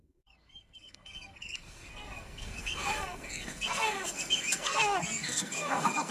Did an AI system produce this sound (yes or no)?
yes